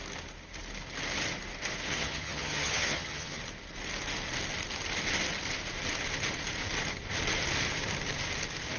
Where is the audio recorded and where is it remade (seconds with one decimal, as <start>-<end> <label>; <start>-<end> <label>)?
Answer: 0.0-1.9 recorded; 1.9-3.4 remade; 3.4-8.8 recorded